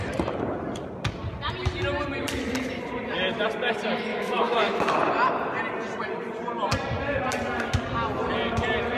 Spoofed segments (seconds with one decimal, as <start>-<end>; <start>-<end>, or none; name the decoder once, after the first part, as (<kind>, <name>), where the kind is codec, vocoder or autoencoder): 4.1-4.8 (autoencoder, DAC-VAE)